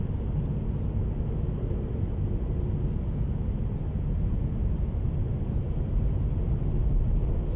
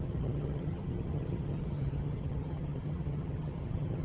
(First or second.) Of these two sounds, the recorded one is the first